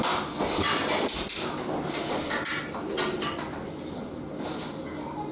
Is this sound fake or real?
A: real